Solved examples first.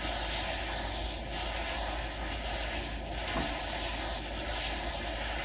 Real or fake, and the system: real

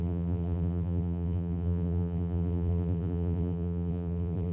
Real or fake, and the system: fake, vocoder, BigVGAN v2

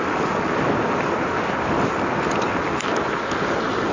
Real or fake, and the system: real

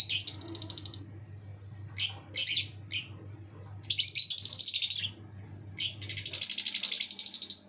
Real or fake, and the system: real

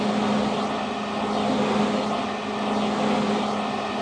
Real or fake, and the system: real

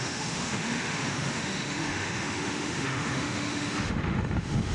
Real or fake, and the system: fake, autoencoder, DAC-VAE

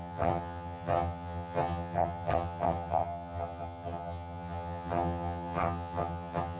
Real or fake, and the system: fake, vocoder, HiFi-GAN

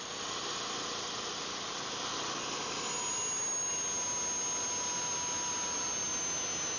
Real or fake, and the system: real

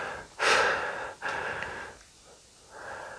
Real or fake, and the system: real